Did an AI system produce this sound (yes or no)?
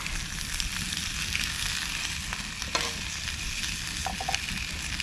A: no